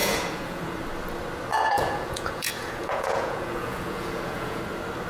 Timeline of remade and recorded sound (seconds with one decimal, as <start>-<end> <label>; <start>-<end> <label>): 0.0-0.6 remade; 0.6-1.5 recorded; 1.5-4.6 remade; 4.6-5.1 recorded